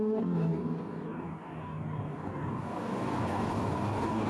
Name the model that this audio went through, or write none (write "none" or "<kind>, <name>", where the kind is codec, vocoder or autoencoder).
codec, DAC